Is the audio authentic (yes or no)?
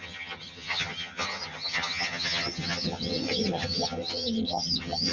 no